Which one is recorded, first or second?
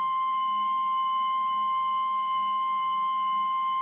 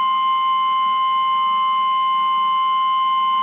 second